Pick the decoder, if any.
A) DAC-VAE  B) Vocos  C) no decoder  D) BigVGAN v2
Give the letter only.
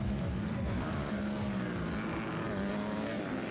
C